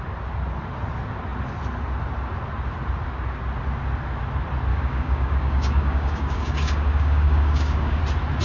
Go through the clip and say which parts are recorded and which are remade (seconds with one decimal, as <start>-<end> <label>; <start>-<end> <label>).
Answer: 0.0-4.7 recorded; 4.7-8.0 remade; 8.0-8.4 recorded